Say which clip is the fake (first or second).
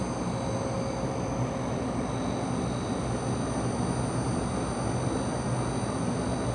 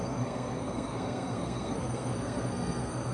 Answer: second